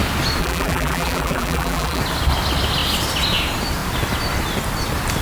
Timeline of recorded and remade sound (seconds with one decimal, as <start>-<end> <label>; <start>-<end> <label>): 0.0-0.4 recorded; 0.4-2.0 remade; 2.0-5.2 recorded

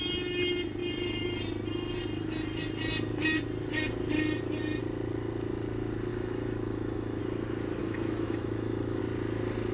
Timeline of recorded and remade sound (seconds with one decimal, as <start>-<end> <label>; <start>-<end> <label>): 0.0-6.1 recorded; 6.1-7.2 remade; 7.2-7.8 recorded; 7.8-9.0 remade; 9.0-9.7 recorded

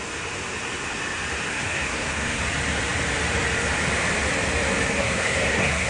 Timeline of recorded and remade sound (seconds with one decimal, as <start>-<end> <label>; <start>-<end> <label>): 0.0-1.5 recorded; 1.5-2.4 remade; 2.4-5.0 recorded; 5.0-5.9 remade

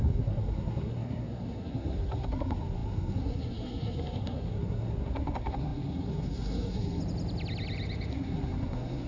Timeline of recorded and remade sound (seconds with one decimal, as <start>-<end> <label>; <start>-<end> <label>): 0.0-7.0 remade; 7.0-8.1 recorded; 8.1-9.1 remade

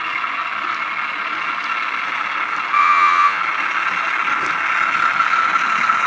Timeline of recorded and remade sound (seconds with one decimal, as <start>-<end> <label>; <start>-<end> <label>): 0.0-2.8 recorded; 2.8-3.4 remade; 3.4-6.1 recorded

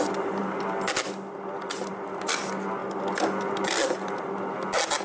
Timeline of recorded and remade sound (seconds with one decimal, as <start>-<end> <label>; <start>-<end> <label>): 0.0-5.0 recorded

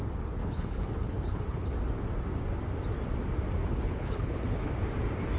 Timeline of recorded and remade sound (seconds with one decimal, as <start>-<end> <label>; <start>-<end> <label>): 0.0-0.4 recorded; 0.4-1.7 remade; 1.7-3.6 recorded; 3.6-4.7 remade; 4.7-5.4 recorded

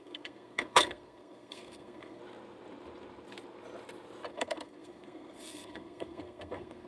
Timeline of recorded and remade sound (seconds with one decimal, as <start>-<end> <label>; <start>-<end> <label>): 0.0-2.2 remade; 2.2-4.3 recorded; 4.3-6.9 remade